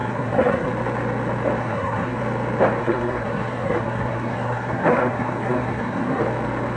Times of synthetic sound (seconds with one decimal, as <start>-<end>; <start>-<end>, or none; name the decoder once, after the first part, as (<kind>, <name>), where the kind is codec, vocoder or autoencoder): 0.0-0.7 (codec, SNAC); 1.6-2.2; 2.8-6.2